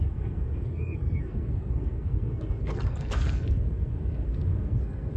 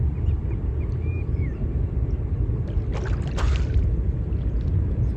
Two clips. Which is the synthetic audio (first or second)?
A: first